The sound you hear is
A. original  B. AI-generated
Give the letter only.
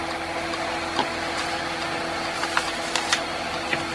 A